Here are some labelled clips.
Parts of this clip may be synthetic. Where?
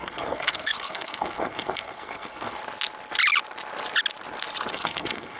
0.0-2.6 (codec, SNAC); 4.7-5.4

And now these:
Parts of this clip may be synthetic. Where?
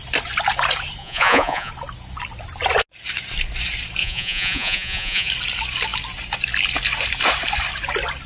1.0-1.7 (vocoder, Vocos); 4.0-5.3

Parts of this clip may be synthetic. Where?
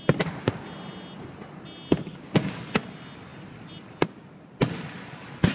2.0-2.6 (codec, DAC)